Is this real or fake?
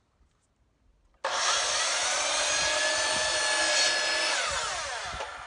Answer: real